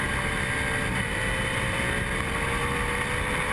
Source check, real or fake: real